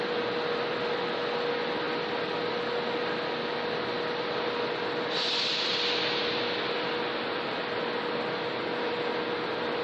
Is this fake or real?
real